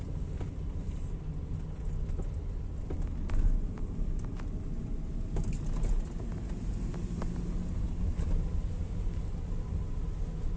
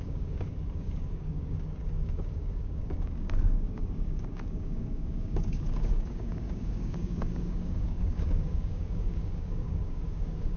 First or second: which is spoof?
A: second